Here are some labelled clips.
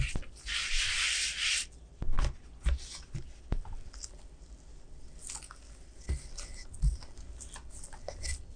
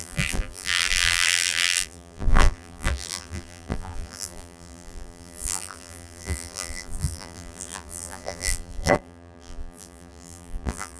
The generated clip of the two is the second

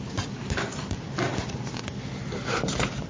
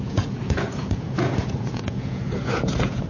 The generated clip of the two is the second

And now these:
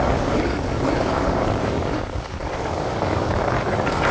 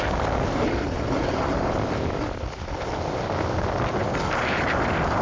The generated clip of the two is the first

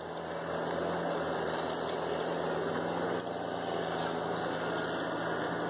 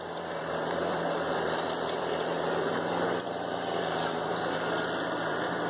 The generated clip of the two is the second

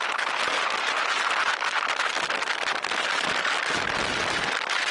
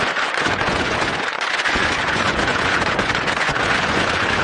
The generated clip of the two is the second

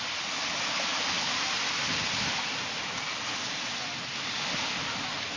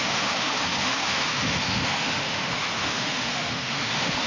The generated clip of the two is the second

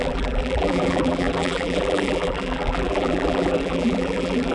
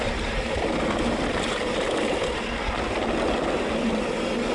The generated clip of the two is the first